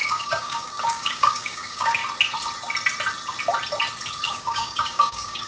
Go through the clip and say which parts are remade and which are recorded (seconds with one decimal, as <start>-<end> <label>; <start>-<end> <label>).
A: 0.0-2.0 remade; 2.0-4.2 recorded; 4.2-5.5 remade